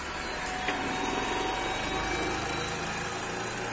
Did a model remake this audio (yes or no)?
no